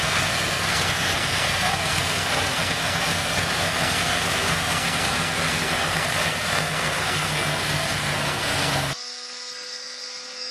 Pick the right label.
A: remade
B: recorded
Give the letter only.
A